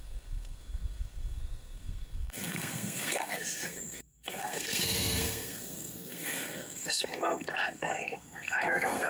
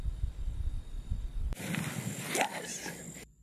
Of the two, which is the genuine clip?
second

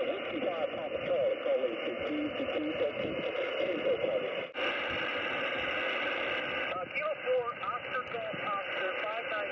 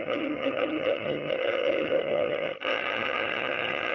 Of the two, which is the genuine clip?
first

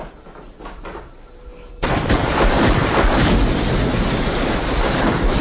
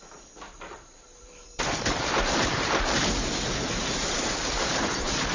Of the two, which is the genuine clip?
first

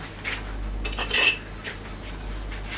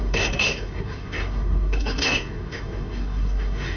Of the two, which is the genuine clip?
first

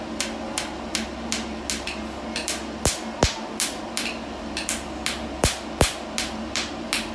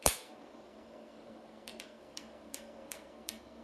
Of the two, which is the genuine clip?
first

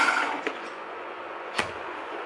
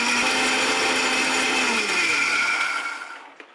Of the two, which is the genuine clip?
second